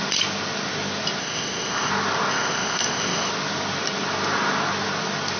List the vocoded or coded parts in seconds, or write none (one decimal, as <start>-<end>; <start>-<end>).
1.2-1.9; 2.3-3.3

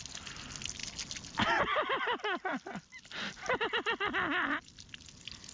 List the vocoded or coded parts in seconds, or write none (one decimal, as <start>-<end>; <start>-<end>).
none

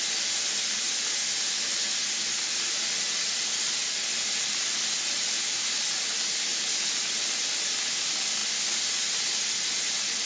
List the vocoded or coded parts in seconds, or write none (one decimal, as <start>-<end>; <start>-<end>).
none

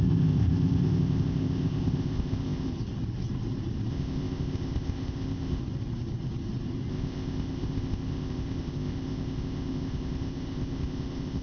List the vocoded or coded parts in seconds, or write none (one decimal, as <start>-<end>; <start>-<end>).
0.0-2.7; 3.9-5.6; 6.9-11.4